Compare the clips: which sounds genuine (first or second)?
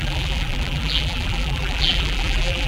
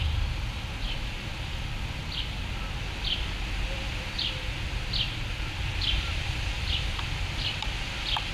second